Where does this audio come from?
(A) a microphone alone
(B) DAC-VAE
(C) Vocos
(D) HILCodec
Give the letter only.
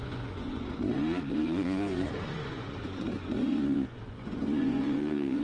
C